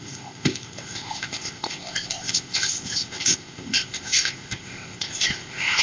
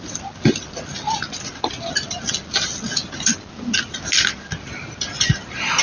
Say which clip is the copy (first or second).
first